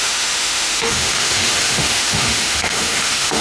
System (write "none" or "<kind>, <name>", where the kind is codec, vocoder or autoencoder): autoencoder, DAC-VAE